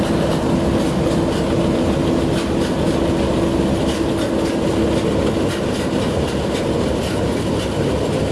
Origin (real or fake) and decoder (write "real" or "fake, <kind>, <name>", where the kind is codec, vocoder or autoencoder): real